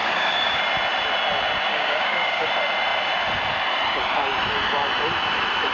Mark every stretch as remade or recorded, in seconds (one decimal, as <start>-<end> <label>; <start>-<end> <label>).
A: 0.0-0.6 remade; 0.6-1.7 recorded; 1.7-2.5 remade; 2.5-5.7 recorded